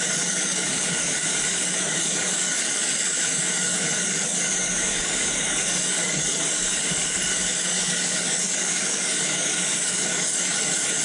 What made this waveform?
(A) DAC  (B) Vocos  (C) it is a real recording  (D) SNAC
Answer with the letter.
A